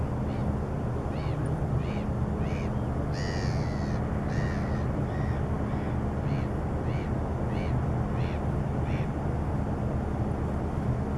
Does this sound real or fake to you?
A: real